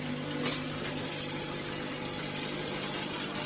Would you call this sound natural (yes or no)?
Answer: yes